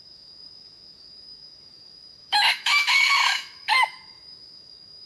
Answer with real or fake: fake